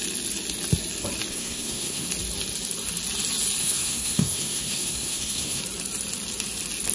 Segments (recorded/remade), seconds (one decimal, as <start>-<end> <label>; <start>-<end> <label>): 0.0-1.3 recorded; 1.3-2.1 remade; 2.1-3.6 recorded; 3.6-5.6 remade; 5.6-6.9 recorded